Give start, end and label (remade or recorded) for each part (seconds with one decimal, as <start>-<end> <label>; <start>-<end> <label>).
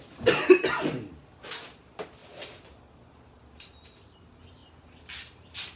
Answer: 0.0-2.2 remade; 2.2-3.4 recorded; 3.4-4.6 remade; 4.6-5.8 recorded